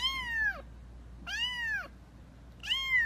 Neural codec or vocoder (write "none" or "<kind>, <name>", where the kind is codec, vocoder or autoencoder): none